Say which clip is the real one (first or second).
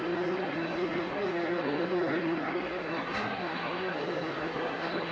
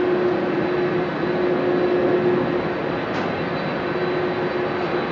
second